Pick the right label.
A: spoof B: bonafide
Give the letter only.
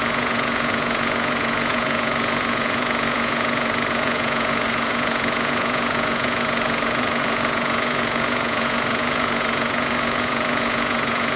A